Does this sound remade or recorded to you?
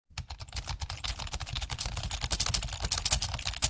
recorded